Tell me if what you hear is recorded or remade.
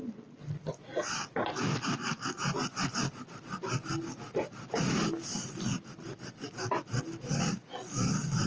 recorded